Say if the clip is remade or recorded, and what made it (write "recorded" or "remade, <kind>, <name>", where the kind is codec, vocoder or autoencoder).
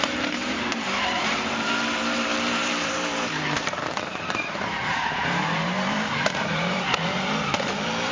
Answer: remade, vocoder, BigVGAN v2